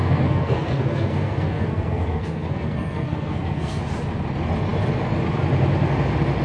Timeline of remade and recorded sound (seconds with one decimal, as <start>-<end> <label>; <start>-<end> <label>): 0.0-3.8 remade; 3.8-6.4 recorded